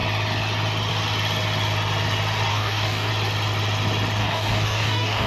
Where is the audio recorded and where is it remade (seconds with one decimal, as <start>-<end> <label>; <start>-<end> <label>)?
0.0-2.5 recorded; 2.5-3.1 remade; 3.1-4.2 recorded; 4.2-5.3 remade